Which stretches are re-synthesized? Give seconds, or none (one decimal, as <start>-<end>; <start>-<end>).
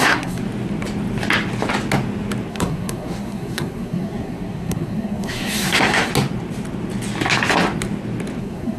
0.0-0.4; 2.5-6.1; 8.4-8.8